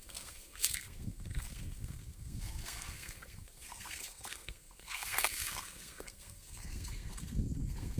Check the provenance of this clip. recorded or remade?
remade